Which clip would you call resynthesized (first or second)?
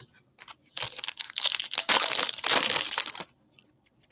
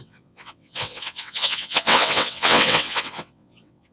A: second